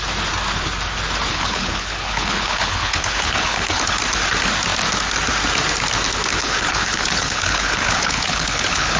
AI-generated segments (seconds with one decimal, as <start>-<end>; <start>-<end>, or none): 1.3-4.0; 6.3-9.0